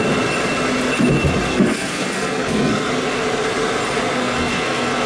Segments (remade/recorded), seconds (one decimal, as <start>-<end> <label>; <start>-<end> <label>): 0.0-1.5 recorded; 1.5-2.9 remade; 2.9-4.2 recorded; 4.2-5.1 remade